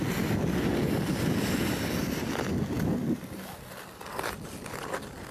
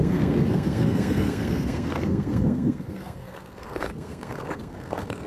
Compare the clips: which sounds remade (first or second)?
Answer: second